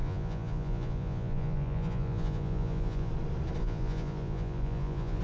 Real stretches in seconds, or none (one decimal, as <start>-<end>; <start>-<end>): 3.1-3.6